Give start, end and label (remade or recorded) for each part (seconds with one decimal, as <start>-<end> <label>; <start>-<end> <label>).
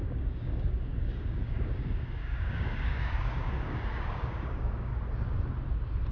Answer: 0.0-4.9 remade; 4.9-6.1 recorded